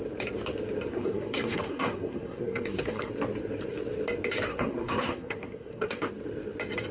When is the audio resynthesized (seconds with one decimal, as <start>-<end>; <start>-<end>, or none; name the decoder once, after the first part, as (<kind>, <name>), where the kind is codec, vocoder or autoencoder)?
0.9-3.1 (codec, SNAC); 4.5-6.1